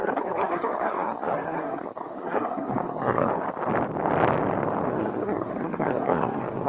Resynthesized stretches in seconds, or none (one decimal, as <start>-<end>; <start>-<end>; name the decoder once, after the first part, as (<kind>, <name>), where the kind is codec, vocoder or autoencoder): 0.0-3.3 (codec, SNAC); 4.9-6.7